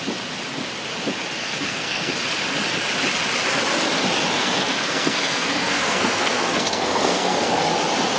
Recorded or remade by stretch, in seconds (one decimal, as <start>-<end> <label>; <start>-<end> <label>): 0.0-1.4 recorded; 1.4-2.1 remade; 2.1-4.4 recorded; 4.4-7.6 remade; 7.6-8.2 recorded